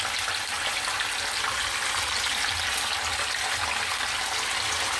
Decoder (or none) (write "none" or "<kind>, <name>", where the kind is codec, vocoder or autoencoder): none